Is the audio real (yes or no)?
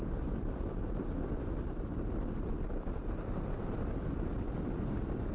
yes